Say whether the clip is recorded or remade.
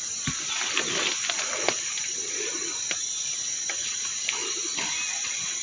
recorded